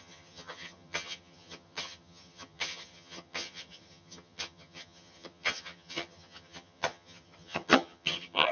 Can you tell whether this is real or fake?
fake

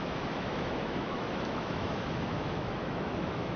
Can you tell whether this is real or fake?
fake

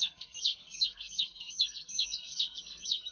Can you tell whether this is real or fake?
fake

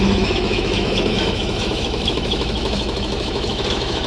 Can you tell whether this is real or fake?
fake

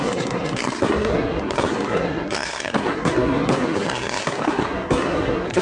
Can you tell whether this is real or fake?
fake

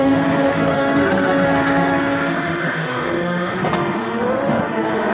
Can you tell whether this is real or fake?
fake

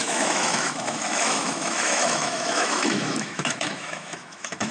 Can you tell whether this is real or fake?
fake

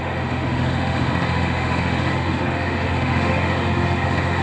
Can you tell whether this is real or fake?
fake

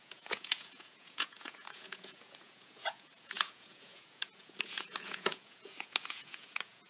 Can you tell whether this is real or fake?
fake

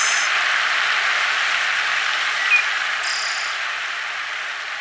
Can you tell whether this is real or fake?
real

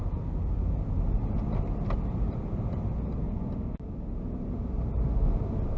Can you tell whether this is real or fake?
real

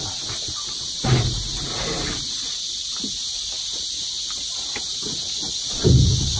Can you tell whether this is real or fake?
real